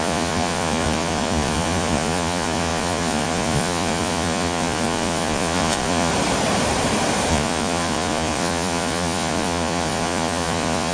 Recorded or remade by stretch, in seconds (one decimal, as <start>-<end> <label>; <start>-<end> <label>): 0.0-6.1 remade; 6.1-7.3 recorded; 7.3-10.9 remade